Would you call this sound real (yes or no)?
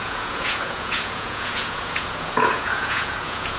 no